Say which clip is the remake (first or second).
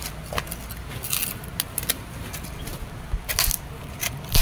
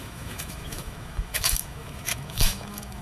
second